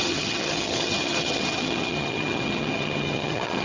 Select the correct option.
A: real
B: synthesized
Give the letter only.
B